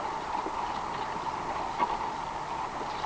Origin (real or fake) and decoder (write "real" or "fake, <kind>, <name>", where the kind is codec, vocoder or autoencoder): real